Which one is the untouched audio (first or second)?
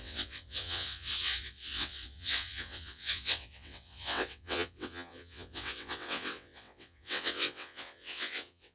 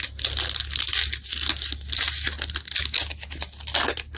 second